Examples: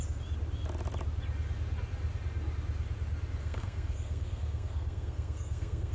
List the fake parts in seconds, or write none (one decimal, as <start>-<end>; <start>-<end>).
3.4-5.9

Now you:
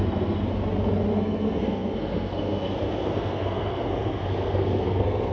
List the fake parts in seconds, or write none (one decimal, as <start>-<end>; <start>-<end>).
0.0-0.5; 1.1-5.3

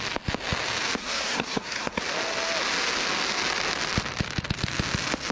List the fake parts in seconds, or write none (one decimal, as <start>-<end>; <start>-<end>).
1.0-2.0

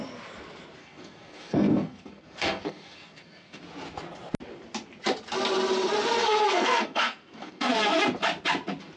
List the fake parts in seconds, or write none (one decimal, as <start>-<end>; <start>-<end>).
0.8-3.6; 6.2-7.7